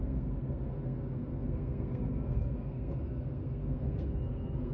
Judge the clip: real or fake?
fake